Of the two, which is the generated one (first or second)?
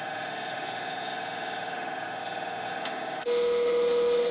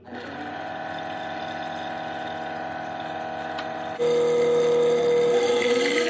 first